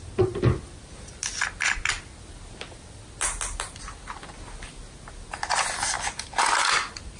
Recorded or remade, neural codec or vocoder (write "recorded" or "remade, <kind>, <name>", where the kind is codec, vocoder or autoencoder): recorded